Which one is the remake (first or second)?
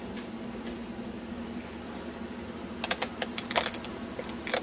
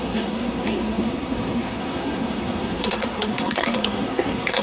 second